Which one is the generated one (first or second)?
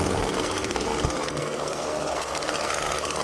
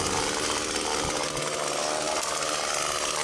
first